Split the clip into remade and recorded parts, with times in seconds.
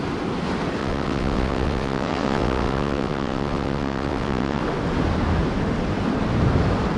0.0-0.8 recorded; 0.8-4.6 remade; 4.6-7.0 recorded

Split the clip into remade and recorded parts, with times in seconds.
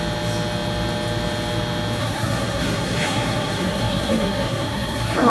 0.0-2.0 recorded; 2.0-5.3 remade